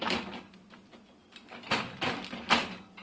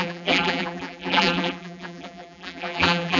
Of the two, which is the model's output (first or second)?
second